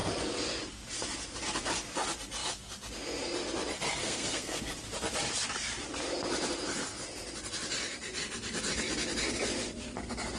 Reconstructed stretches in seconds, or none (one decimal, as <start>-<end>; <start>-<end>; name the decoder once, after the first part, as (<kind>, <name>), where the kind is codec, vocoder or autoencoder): 4.0-4.6 (codec, SNAC)